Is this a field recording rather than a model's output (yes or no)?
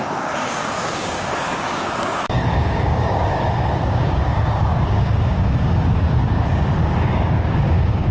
no